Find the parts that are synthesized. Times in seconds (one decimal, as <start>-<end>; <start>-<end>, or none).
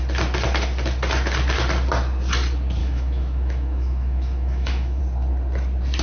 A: 2.8-5.0